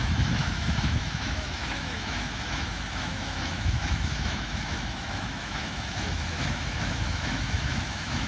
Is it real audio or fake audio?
fake